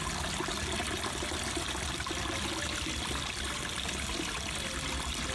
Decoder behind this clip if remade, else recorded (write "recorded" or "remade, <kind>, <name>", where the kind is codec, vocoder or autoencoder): recorded